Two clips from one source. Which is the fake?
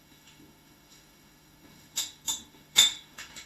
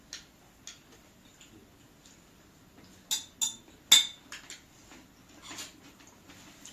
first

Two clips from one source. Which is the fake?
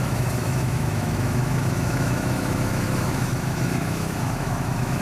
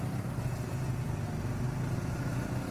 first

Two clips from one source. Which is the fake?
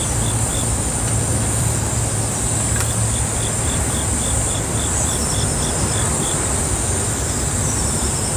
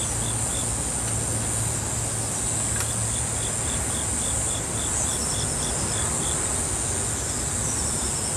first